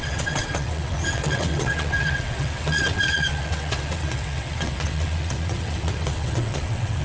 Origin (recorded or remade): remade